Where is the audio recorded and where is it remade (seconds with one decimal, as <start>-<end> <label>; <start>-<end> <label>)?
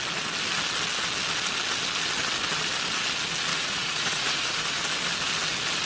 0.0-3.5 recorded; 3.5-4.8 remade; 4.8-5.9 recorded